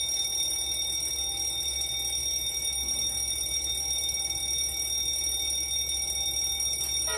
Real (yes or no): yes